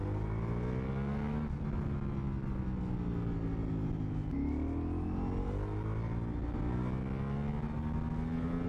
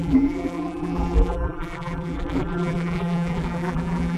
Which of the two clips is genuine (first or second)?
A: first